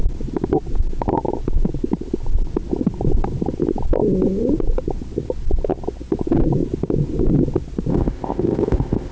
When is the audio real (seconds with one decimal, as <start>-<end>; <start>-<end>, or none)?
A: 0.0-7.9